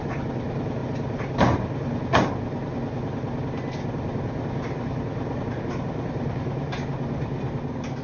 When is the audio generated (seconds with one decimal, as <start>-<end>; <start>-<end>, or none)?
none